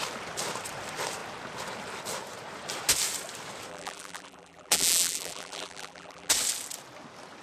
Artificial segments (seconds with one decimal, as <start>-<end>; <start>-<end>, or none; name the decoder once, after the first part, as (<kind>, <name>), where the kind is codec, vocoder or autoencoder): 3.7-6.3 (vocoder, BigVGAN v2)